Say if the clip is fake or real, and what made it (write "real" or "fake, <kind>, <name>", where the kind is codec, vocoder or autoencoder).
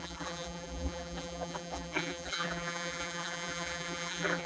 fake, vocoder, BigVGAN v2